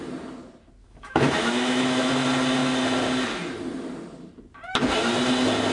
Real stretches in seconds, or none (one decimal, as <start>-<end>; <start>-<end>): 0.0-0.8; 2.1-5.7